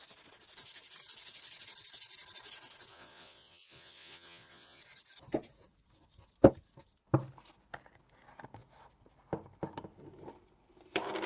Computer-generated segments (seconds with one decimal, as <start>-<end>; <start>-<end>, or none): 2.9-4.8